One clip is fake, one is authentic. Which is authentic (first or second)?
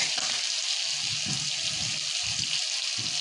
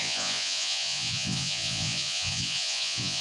first